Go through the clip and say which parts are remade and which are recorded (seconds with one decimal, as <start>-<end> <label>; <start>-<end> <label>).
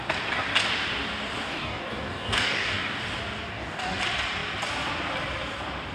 0.0-1.5 recorded; 1.5-3.0 remade; 3.0-3.5 recorded; 3.5-4.0 remade; 4.0-5.9 recorded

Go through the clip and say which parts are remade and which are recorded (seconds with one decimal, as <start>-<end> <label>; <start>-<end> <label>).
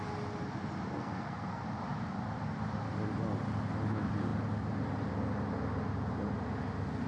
0.0-1.0 recorded; 1.0-1.6 remade; 1.6-7.1 recorded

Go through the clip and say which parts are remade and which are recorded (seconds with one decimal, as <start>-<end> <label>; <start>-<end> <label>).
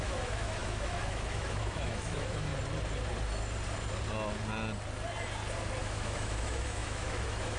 0.0-2.5 remade; 2.5-5.8 recorded; 5.8-7.6 remade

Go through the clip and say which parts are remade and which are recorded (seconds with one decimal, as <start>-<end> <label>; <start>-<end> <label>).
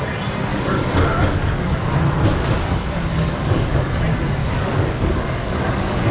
0.0-0.5 recorded; 0.5-1.8 remade; 1.8-2.3 recorded; 2.3-3.9 remade; 3.9-4.4 recorded; 4.4-6.1 remade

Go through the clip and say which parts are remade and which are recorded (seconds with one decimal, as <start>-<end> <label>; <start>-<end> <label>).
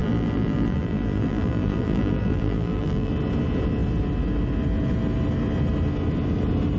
0.0-3.1 remade; 3.1-6.8 recorded